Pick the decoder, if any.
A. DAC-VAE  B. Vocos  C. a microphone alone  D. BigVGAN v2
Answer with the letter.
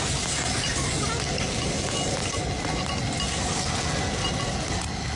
C